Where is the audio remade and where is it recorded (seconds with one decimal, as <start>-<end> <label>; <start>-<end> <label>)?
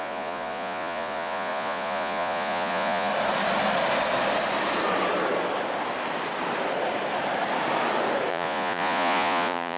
0.0-3.1 remade; 3.1-8.3 recorded; 8.3-9.8 remade